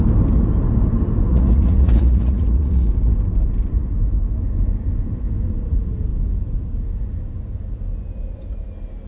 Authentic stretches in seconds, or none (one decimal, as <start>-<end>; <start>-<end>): 0.0-1.3; 2.9-9.1